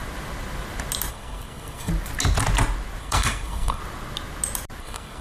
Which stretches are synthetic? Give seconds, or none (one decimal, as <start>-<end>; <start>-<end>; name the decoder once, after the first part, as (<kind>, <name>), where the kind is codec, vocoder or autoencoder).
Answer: 1.1-1.9 (codec, SNAC); 3.0-3.8; 4.8-5.2